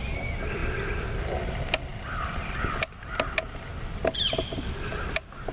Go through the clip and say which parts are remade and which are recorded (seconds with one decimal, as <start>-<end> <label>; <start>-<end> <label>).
0.0-5.5 recorded